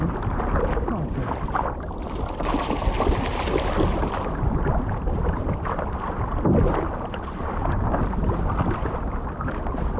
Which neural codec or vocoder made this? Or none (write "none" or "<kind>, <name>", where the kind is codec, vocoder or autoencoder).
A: none